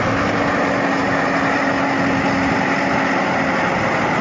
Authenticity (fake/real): real